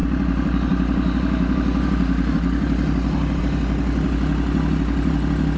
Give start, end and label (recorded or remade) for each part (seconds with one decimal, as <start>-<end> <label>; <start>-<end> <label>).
0.0-5.6 recorded